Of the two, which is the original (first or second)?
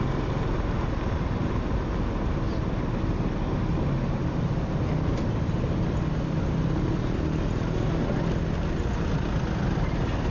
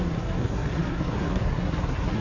first